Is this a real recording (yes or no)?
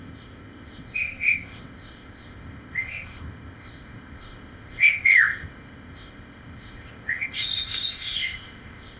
no